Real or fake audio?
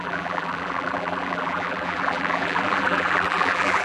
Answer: fake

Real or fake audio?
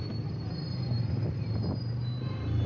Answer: real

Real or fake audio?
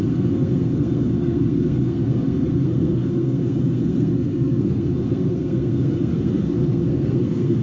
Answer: fake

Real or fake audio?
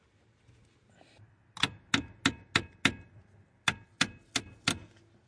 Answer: real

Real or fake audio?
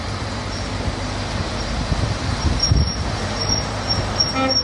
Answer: fake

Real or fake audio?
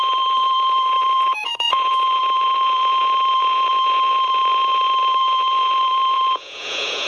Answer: fake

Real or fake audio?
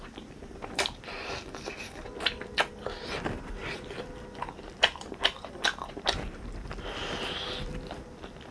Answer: fake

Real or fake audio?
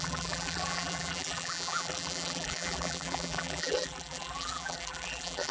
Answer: fake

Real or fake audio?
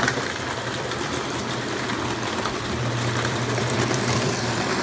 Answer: fake